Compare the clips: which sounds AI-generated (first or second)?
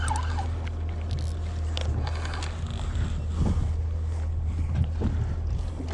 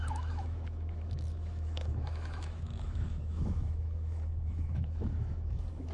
second